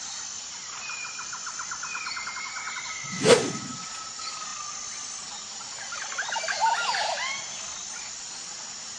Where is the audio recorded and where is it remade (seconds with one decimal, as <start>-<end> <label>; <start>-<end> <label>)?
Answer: 0.0-6.6 recorded; 6.6-7.6 remade; 7.6-9.0 recorded